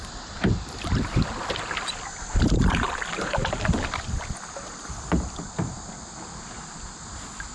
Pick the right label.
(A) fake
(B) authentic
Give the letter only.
B